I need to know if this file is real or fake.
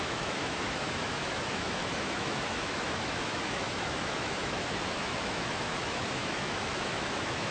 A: fake